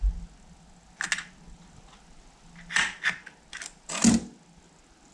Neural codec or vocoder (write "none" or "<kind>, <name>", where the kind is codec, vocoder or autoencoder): none